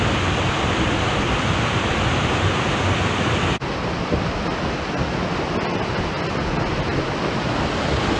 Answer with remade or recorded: recorded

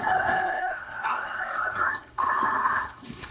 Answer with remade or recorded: remade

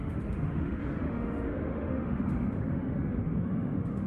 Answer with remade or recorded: remade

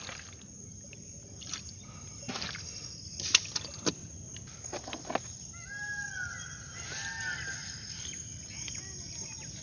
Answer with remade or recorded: recorded